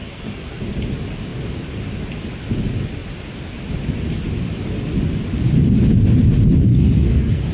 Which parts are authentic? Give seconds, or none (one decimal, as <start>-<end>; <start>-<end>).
0.6-6.7